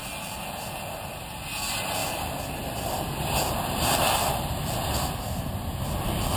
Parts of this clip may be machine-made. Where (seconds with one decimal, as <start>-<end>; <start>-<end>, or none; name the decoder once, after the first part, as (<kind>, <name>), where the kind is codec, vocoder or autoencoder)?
none